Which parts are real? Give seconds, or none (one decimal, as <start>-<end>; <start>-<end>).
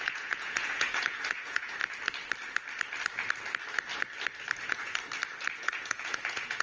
1.8-4.6; 5.0-5.6